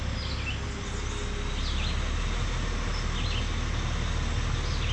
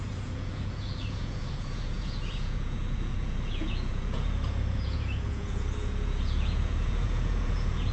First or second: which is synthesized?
second